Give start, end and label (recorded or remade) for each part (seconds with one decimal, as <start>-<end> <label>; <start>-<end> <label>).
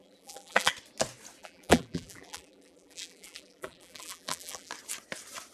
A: 0.0-0.7 remade; 0.7-1.4 recorded; 1.4-4.7 remade; 4.7-5.5 recorded